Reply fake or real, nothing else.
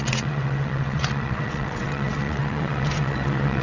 fake